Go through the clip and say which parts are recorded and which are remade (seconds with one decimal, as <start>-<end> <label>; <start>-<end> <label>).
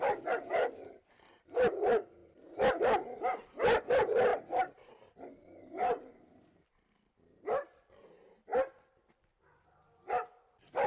0.0-4.3 recorded; 4.3-7.1 remade; 7.1-10.9 recorded